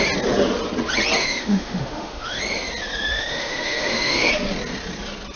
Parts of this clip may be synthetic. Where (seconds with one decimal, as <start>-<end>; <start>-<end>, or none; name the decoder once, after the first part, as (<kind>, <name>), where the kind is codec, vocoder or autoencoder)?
1.2-2.4 (autoencoder, DAC-VAE); 3.1-4.3